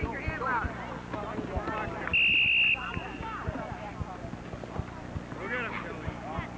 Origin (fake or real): real